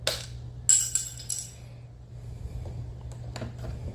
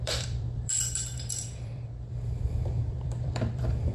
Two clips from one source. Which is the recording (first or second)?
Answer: first